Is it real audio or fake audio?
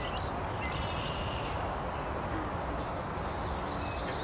real